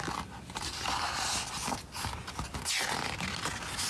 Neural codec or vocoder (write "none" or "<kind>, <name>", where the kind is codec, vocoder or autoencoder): none